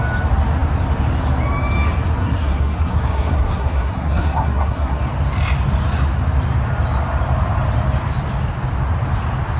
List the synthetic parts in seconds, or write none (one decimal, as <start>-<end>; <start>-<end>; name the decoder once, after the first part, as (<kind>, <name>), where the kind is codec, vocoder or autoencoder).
2.2-5.1 (codec, SNAC)